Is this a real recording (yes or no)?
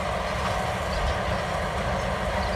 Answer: yes